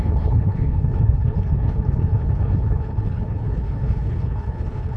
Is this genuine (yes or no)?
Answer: no